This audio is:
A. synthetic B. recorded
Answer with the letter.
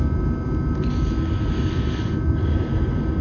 B